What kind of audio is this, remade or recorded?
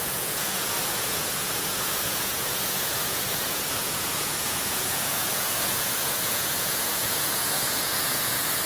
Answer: remade